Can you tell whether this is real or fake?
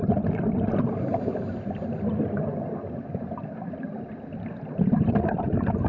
real